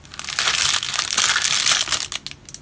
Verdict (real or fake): real